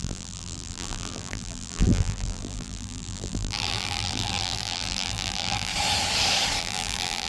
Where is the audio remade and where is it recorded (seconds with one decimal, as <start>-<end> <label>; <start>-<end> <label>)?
0.0-5.7 remade; 5.7-6.6 recorded; 6.6-7.3 remade